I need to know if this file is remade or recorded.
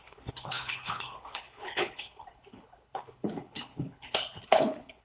remade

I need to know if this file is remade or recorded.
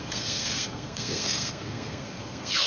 remade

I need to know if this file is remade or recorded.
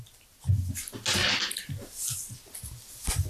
recorded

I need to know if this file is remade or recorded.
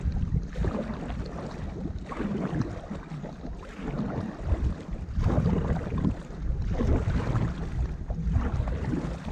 recorded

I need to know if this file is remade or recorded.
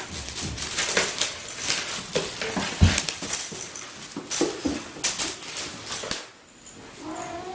recorded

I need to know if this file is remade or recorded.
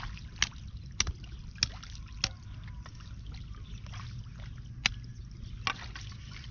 recorded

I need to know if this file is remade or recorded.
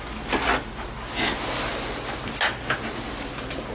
recorded